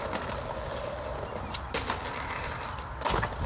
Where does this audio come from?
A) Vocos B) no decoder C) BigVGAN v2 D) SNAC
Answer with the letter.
B